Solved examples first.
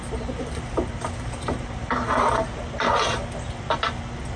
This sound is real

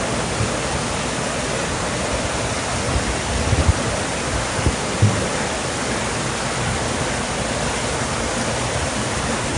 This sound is real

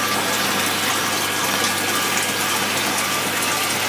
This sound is real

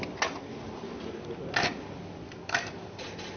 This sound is real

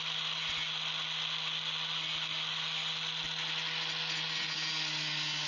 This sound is real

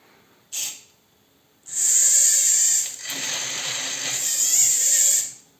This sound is real